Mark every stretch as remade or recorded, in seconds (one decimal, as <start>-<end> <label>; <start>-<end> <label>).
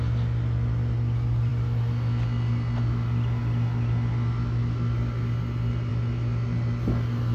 0.0-7.3 recorded